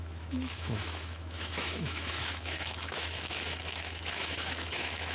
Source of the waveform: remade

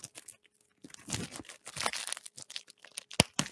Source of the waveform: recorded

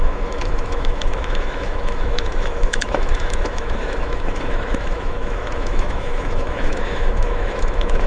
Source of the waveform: remade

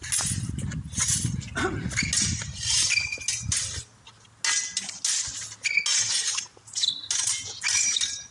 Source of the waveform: recorded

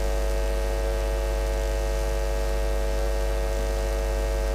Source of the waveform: recorded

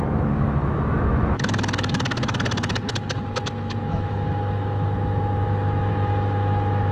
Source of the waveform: remade